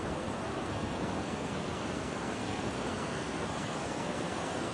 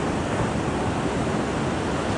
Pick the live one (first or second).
second